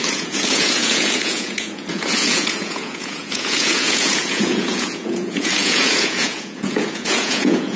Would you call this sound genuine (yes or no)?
no